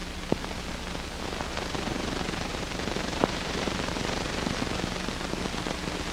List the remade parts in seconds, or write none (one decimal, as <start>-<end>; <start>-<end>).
2.5-4.5